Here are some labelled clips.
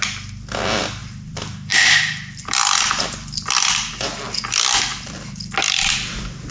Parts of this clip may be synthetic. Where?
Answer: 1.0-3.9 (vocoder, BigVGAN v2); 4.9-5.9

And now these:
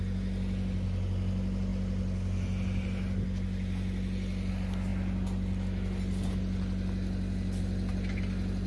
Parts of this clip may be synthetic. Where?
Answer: none